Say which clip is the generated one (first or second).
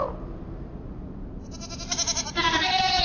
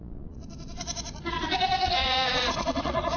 second